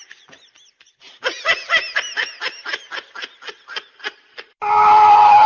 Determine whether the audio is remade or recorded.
recorded